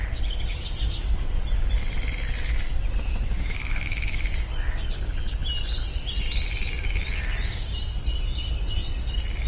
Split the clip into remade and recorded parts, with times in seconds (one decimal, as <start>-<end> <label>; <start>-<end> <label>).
0.0-3.1 recorded; 3.1-4.3 remade; 4.3-9.5 recorded